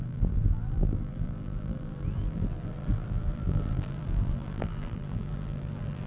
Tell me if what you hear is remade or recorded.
remade